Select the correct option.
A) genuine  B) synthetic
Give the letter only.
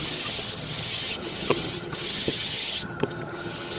B